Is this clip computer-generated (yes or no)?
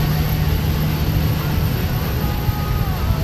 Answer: no